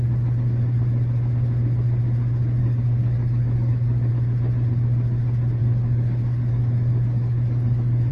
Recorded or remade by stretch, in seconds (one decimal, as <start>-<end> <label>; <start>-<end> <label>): 0.0-2.6 recorded; 2.6-4.1 remade; 4.1-5.6 recorded; 5.6-8.1 remade